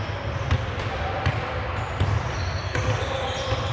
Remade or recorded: remade